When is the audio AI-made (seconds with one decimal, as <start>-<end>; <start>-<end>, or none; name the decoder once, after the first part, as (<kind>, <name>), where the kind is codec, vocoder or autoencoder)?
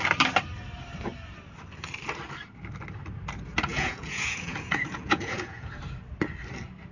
3.7-5.7 (vocoder, Vocos)